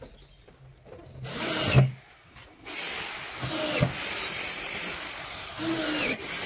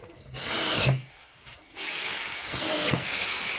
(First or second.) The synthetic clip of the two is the second